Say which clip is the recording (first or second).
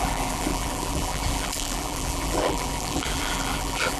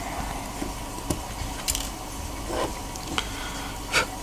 second